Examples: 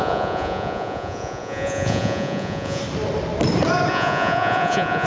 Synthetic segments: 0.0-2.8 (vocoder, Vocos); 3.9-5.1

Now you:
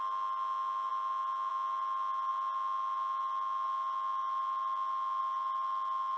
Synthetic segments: none

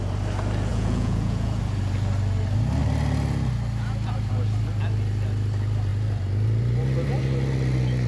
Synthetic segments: 0.7-1.6 (vocoder, Vocos)